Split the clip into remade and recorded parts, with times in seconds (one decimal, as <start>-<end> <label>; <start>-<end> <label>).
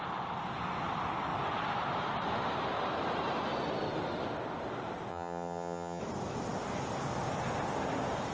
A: 0.0-5.1 recorded; 5.1-6.0 remade; 6.0-8.3 recorded